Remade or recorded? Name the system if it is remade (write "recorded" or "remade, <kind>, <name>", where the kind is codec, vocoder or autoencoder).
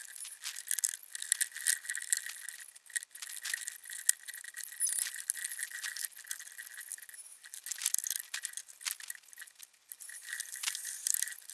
recorded